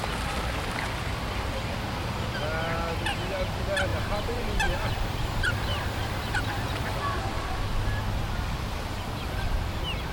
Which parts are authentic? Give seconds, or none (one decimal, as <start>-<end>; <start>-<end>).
0.0-3.9; 7.5-10.1